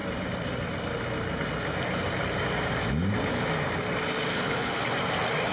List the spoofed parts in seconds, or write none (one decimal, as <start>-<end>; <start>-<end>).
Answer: 4.3-4.8